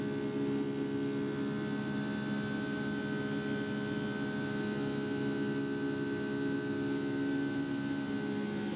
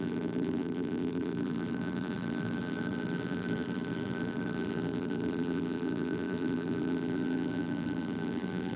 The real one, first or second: first